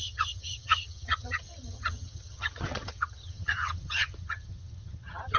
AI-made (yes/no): yes